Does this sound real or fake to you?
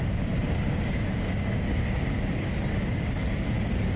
fake